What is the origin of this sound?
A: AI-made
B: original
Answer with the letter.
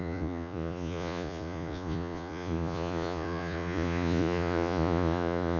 A